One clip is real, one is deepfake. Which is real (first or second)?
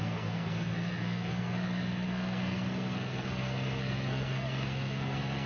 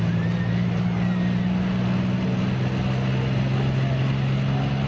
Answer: second